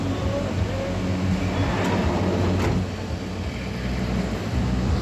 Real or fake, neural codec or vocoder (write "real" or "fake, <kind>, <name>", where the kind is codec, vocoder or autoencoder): real